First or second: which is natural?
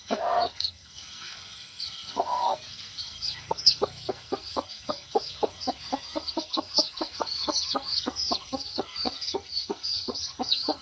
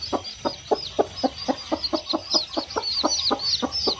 second